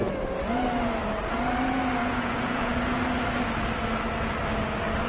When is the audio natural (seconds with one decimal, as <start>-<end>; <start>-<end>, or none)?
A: 0.0-2.0; 2.8-5.1